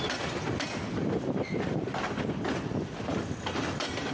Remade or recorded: recorded